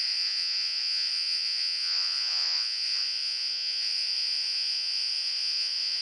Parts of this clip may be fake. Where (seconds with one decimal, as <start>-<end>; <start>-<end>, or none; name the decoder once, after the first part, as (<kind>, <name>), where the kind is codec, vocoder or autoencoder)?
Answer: 0.0-6.0 (vocoder, Vocos)